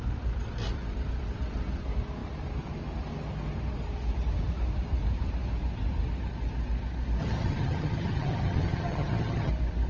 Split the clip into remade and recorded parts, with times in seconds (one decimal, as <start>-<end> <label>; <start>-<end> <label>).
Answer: 0.0-7.2 recorded; 7.2-9.5 remade; 9.5-9.9 recorded